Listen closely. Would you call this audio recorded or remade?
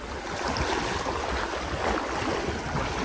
recorded